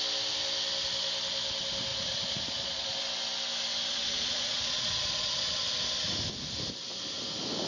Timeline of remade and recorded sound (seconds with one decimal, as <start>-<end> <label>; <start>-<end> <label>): 0.0-1.9 recorded; 1.9-3.0 remade; 3.0-3.9 recorded; 3.9-5.6 remade; 5.6-7.7 recorded